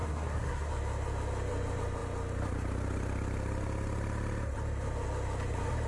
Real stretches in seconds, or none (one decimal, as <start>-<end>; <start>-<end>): 0.7-5.9